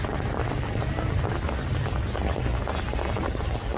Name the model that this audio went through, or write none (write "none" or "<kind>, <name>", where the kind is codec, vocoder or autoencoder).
none